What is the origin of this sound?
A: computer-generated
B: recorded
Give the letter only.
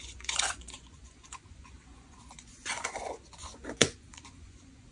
A